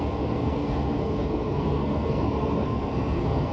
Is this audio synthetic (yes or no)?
yes